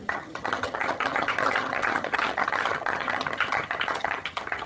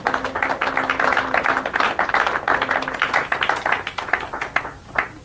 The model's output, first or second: first